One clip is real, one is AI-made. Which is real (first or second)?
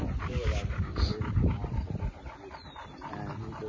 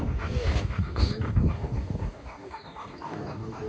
first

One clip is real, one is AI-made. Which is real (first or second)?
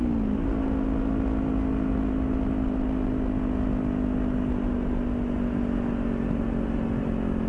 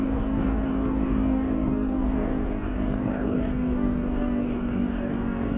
first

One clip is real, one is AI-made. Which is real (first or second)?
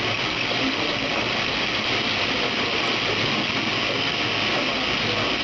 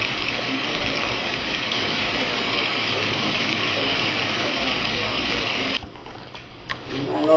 first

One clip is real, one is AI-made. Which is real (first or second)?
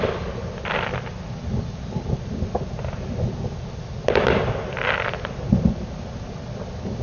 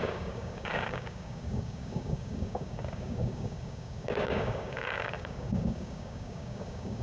first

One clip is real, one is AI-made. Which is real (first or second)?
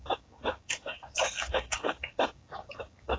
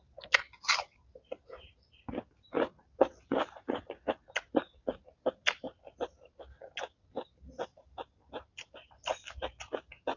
second